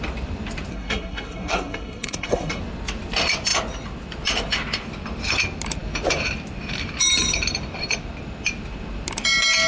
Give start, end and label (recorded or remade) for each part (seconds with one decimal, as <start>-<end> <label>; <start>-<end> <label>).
0.0-0.7 recorded; 0.7-2.6 remade; 2.6-9.7 recorded